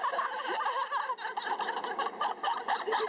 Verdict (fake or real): real